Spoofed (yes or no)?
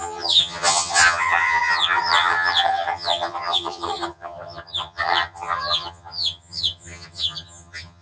yes